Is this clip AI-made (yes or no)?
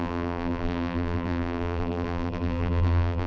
yes